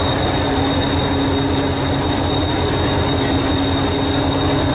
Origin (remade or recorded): recorded